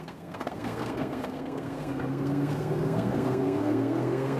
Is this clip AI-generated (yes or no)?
yes